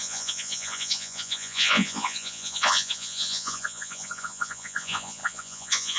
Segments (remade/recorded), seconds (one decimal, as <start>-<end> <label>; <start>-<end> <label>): 0.0-6.0 remade